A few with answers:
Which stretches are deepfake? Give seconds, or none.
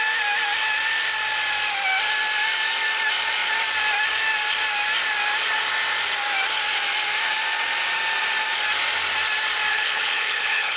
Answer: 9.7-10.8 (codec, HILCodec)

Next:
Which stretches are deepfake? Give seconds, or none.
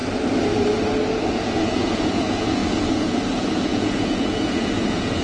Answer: 1.3-5.2 (vocoder, Vocos)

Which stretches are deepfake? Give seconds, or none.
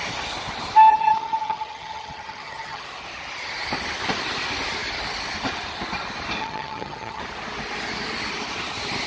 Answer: 0.9-2.8 (vocoder, HiFi-GAN); 6.4-7.2